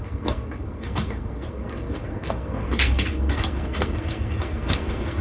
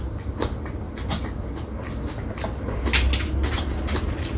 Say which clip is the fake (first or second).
first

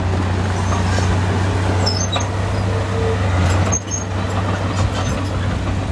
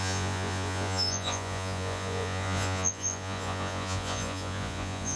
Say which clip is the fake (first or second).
second